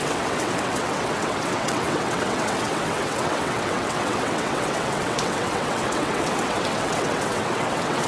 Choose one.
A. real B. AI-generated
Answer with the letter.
B